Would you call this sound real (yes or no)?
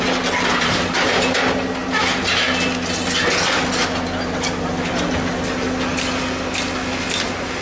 yes